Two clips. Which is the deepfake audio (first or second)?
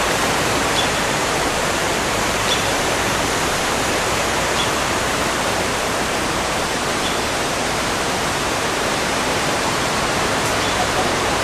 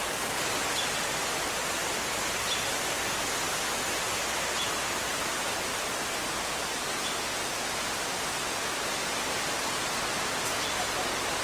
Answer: first